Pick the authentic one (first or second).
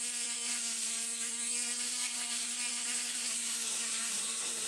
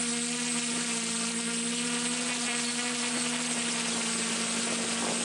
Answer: second